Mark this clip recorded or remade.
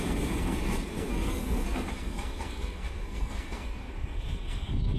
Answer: remade